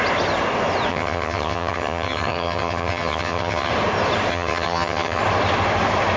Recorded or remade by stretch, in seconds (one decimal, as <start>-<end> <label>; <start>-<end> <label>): 0.0-0.9 recorded; 0.9-3.7 remade; 3.7-4.3 recorded; 4.3-5.2 remade; 5.2-6.2 recorded

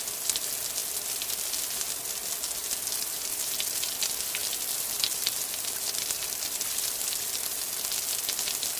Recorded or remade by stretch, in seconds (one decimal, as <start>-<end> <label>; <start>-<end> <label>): 0.0-4.4 recorded; 4.4-7.1 remade; 7.1-8.8 recorded